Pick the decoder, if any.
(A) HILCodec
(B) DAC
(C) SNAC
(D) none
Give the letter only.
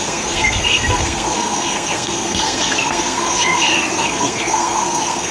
C